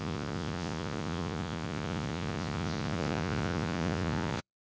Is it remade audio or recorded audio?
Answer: remade